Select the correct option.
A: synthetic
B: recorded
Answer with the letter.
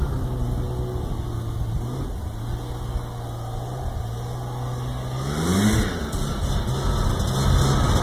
B